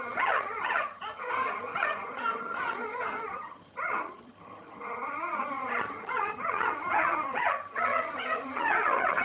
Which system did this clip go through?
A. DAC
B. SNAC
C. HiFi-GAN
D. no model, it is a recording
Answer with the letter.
C